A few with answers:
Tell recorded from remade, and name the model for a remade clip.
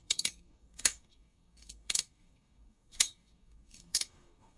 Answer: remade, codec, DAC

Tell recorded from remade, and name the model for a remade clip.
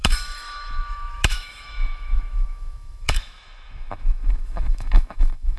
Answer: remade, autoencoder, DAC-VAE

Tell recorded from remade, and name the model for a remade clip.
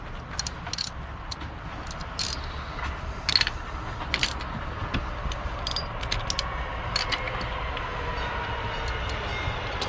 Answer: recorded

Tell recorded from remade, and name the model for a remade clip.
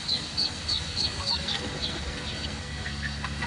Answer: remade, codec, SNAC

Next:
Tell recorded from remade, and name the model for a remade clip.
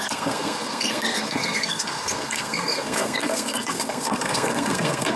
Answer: remade, codec, SNAC